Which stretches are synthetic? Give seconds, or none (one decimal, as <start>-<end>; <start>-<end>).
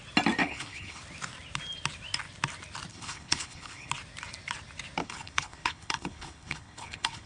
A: 0.4-1.0; 2.9-3.9; 5.0-7.3